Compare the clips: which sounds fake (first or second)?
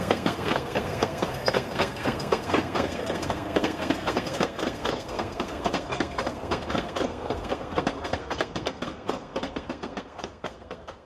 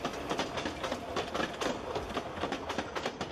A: first